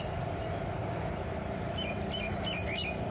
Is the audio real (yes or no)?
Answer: yes